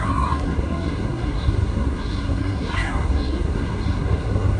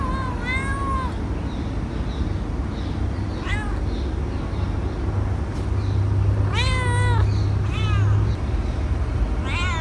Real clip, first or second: second